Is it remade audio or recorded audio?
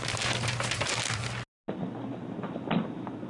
recorded